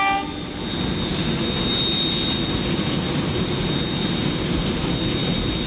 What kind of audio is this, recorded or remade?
recorded